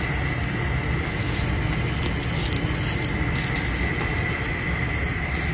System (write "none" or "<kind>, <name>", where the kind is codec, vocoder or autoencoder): none